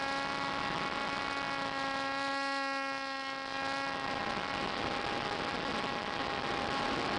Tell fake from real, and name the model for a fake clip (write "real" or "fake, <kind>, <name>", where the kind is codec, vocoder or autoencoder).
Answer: real